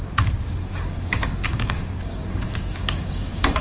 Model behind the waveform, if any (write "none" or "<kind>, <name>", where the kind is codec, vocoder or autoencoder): codec, DAC